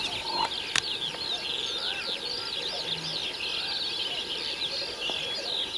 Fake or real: real